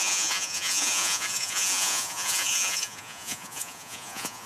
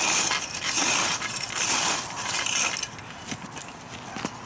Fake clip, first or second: first